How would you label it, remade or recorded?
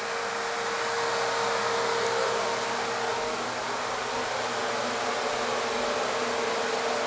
recorded